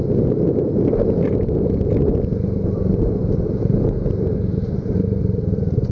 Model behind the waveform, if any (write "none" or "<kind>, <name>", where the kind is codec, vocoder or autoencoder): none